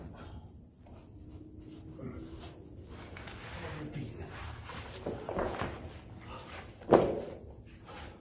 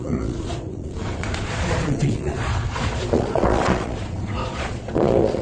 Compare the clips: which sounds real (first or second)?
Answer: first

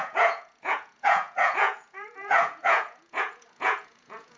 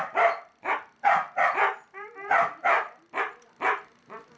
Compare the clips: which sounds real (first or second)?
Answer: second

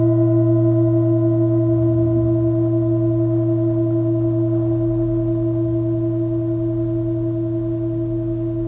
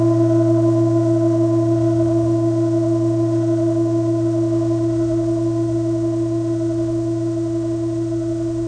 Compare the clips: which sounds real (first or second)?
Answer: first